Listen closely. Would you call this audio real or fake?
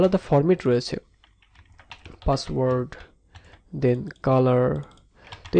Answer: real